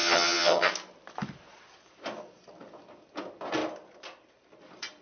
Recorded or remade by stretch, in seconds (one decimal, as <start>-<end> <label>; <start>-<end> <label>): 0.0-0.7 remade; 0.7-5.0 recorded